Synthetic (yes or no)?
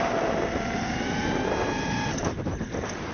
no